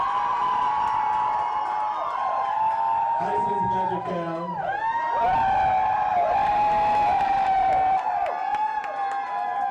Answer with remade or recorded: recorded